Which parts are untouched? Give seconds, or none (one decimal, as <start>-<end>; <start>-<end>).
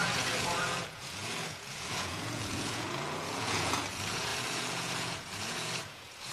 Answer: none